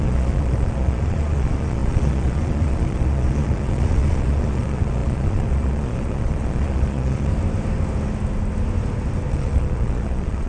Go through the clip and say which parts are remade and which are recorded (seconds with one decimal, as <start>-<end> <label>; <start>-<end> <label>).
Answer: 0.0-7.3 remade; 7.3-9.3 recorded; 9.3-10.5 remade